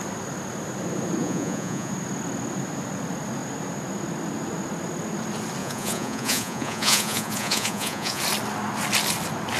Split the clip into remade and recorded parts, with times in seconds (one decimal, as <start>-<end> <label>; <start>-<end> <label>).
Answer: 0.0-1.2 recorded; 1.2-1.9 remade; 1.9-5.6 recorded; 5.6-8.2 remade; 8.2-9.6 recorded